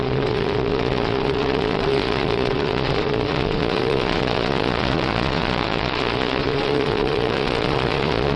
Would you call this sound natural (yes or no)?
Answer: no